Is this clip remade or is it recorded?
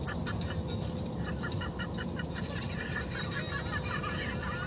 recorded